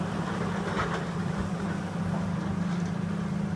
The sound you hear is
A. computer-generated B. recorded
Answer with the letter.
B